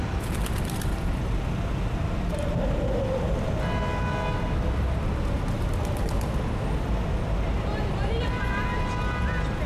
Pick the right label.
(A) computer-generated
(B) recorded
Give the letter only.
B